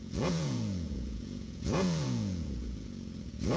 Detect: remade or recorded remade